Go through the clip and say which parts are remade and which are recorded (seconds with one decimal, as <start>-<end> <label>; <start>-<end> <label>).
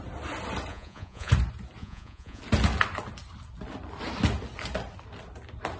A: 0.0-0.7 recorded; 0.7-1.3 remade; 1.3-1.8 recorded; 1.8-2.4 remade; 2.4-5.8 recorded